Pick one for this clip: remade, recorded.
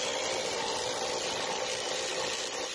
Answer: recorded